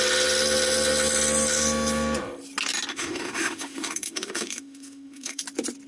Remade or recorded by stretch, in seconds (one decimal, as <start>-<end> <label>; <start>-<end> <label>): 0.0-2.9 recorded; 2.9-5.4 remade; 5.4-5.9 recorded